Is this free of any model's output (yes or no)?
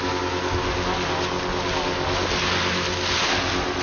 yes